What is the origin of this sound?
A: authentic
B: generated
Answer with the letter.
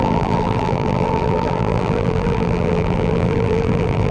B